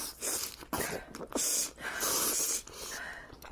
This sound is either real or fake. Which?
real